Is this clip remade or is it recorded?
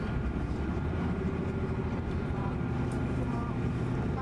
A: remade